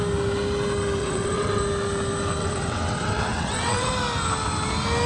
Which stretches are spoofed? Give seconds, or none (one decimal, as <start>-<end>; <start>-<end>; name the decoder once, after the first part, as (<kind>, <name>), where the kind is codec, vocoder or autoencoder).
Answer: 1.0-1.6 (vocoder, WaveNeXt); 2.4-3.9